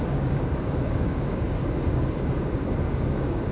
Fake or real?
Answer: fake